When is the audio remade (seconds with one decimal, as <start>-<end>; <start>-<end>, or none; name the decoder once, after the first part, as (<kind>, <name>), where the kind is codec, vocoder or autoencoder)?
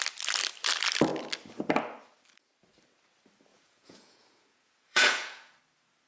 3.5-5.6 (vocoder, Vocos)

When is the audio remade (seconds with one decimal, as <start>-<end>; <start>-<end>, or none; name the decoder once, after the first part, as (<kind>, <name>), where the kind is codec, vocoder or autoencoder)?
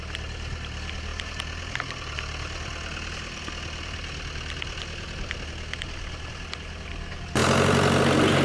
none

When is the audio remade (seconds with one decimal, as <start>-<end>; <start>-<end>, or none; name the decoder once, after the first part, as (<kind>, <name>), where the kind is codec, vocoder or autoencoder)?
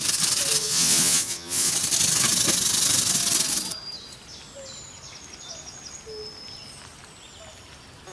0.6-1.7 (vocoder, Vocos)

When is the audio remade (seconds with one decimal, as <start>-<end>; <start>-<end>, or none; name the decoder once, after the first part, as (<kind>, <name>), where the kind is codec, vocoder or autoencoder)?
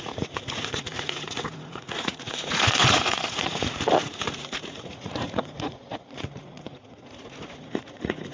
0.0-8.3 (vocoder, Vocos)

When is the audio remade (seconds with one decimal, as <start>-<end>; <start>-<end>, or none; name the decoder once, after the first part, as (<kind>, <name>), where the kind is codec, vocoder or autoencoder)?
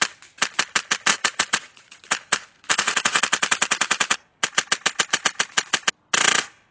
1.1-2.0 (vocoder, Vocos); 2.7-3.2